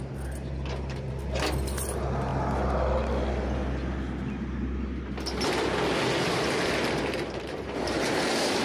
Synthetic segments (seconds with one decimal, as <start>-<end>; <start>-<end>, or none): 6.8-8.0